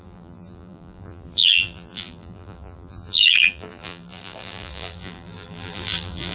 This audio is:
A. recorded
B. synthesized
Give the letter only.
B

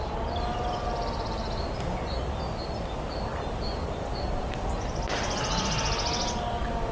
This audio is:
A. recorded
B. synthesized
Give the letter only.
A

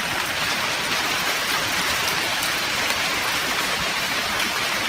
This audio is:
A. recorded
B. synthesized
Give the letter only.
B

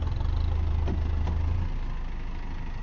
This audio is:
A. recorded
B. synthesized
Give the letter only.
A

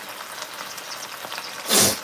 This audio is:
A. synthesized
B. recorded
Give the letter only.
B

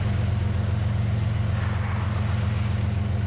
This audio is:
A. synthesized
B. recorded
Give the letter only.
B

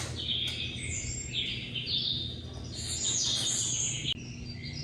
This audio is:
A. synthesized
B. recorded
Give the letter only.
B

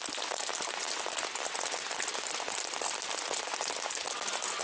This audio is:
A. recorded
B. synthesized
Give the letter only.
A